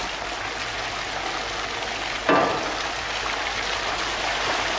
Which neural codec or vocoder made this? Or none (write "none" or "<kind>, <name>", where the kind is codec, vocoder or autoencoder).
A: none